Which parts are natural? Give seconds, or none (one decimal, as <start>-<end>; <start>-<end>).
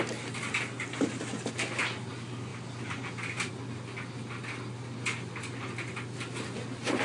0.0-7.0